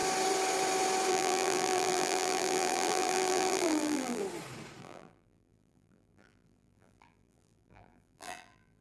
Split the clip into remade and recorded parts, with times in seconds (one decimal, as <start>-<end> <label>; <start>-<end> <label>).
0.0-1.1 recorded; 1.1-4.2 remade; 4.2-4.8 recorded; 4.8-8.8 remade